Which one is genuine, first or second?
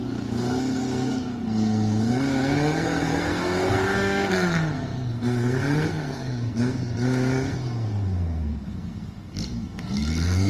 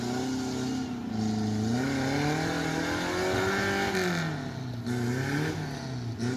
second